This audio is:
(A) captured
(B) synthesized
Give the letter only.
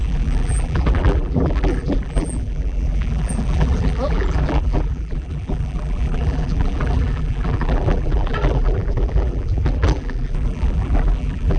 B